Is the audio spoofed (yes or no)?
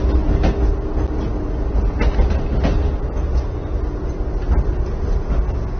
no